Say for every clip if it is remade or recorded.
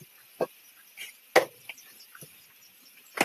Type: recorded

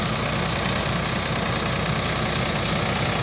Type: recorded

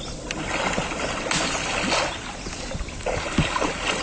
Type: recorded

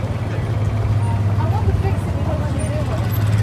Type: recorded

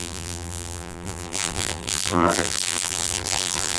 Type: remade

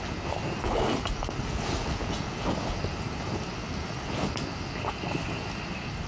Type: recorded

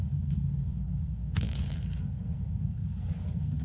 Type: remade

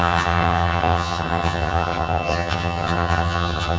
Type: remade